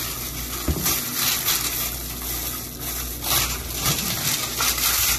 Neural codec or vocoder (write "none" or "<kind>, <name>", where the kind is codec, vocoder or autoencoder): none